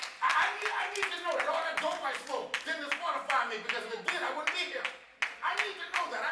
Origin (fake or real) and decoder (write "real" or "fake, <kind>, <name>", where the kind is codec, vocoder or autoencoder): real